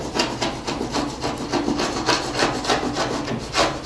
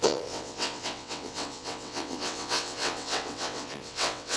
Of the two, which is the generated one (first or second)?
second